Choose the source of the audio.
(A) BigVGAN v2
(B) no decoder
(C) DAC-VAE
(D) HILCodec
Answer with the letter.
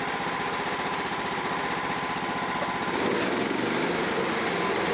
B